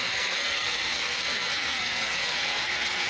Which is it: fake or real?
fake